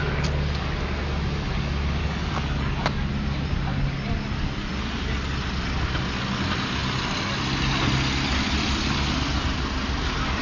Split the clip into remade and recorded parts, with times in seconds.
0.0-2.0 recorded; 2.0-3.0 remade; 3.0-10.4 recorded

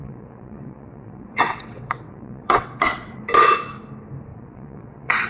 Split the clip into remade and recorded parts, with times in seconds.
0.0-3.2 remade; 3.2-4.3 recorded; 4.3-5.3 remade

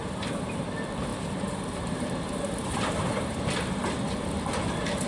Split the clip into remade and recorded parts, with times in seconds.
0.0-0.7 remade; 0.7-1.1 recorded; 1.1-3.4 remade; 3.4-5.1 recorded

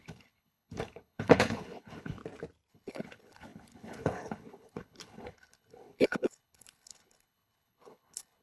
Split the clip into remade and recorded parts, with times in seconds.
0.0-2.2 remade; 2.2-2.7 recorded; 2.7-8.4 remade